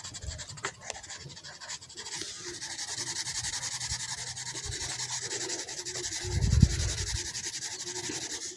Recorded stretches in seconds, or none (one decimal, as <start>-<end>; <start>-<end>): 0.0-8.6